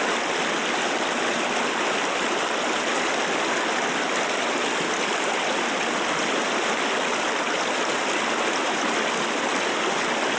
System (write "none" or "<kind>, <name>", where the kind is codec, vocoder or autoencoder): none